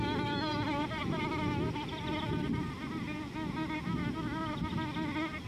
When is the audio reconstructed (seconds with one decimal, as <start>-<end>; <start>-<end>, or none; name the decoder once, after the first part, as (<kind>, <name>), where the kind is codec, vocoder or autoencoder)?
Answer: none